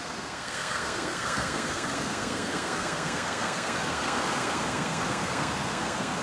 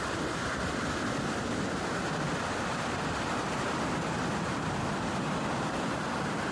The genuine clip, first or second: second